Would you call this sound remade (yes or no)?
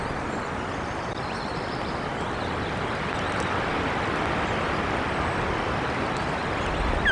no